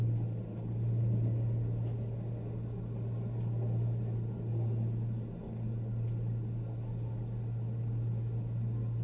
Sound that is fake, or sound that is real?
real